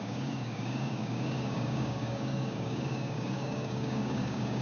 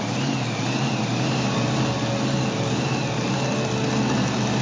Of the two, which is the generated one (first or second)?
first